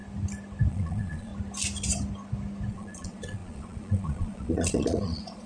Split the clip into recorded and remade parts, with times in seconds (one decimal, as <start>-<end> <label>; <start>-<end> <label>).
0.0-0.7 recorded; 0.7-1.3 remade; 1.3-2.7 recorded; 2.7-5.5 remade